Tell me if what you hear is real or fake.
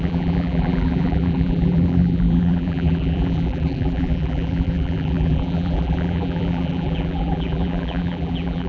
fake